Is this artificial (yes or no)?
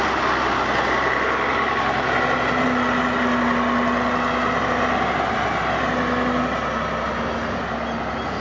no